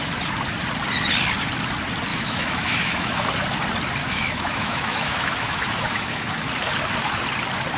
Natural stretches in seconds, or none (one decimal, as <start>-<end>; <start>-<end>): 0.0-2.1; 3.3-4.0; 6.5-7.8